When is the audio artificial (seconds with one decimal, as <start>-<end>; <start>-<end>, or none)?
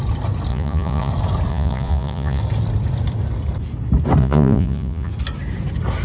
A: 0.5-1.1; 1.5-2.4; 4.2-5.1